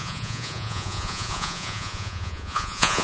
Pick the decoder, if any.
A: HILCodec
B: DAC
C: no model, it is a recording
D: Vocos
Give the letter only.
D